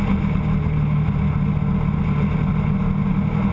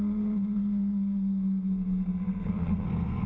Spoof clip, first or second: second